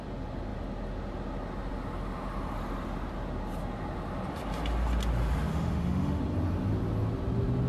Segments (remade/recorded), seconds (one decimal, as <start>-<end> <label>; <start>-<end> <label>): 0.0-5.5 recorded; 5.5-6.2 remade; 6.2-7.7 recorded

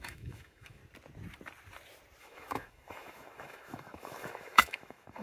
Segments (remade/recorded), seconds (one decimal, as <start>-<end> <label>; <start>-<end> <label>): 0.0-0.8 remade; 0.8-2.2 recorded; 2.2-5.2 remade

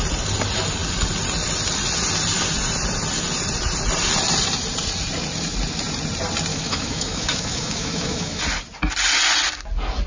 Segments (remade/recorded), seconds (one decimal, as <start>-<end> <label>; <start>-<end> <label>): 0.0-6.5 recorded; 6.5-8.4 remade; 8.4-10.1 recorded

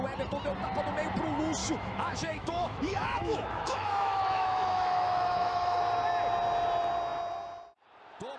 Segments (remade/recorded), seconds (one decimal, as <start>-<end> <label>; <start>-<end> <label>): 0.0-1.6 recorded; 1.6-5.8 remade; 5.8-8.4 recorded

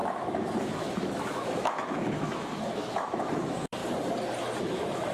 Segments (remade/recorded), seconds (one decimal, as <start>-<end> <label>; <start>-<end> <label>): 0.0-3.8 remade; 3.8-4.6 recorded; 4.6-5.1 remade

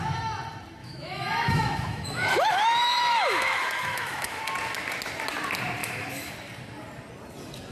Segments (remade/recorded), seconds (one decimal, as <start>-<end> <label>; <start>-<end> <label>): 0.0-0.8 recorded; 0.8-4.4 remade; 4.4-5.8 recorded; 5.8-6.3 remade; 6.3-7.7 recorded